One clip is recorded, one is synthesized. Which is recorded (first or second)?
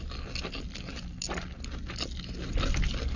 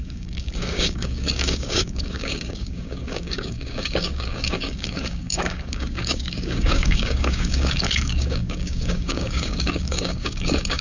first